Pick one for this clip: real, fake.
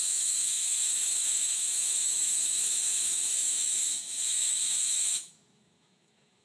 fake